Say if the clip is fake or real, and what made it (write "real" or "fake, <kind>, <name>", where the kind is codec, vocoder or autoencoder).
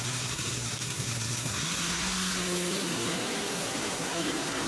fake, codec, SNAC